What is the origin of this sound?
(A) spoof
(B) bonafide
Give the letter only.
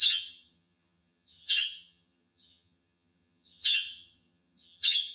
A